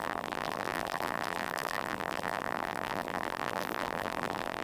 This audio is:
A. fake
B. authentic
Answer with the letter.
A